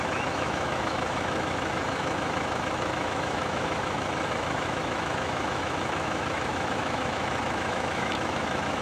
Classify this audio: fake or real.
fake